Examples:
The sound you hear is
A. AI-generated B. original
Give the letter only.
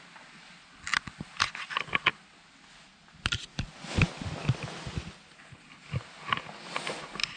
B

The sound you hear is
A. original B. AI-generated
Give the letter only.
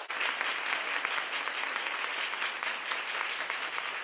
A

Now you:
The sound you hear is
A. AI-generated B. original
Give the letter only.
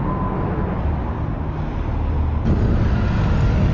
B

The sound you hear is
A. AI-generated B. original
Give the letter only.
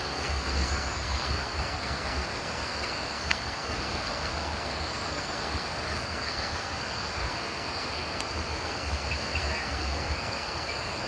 A